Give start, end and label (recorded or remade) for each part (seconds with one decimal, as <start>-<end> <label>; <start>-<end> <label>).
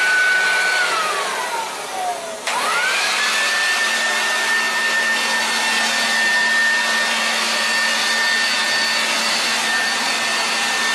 0.0-10.9 recorded